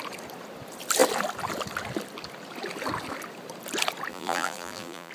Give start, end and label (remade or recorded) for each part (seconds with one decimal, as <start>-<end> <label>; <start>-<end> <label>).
0.0-4.1 recorded; 4.1-5.1 remade